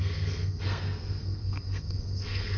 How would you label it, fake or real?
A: fake